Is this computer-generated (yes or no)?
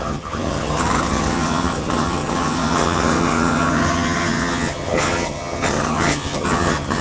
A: yes